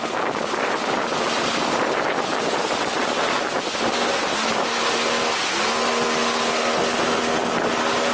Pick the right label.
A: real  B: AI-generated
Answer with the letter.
A